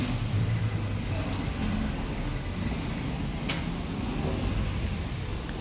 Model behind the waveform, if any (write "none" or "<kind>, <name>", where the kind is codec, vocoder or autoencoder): none